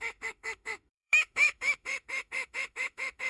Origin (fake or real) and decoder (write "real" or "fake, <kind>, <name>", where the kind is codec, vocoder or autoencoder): fake, autoencoder, DAC-VAE